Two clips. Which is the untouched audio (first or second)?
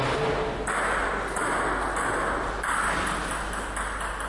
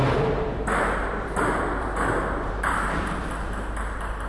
first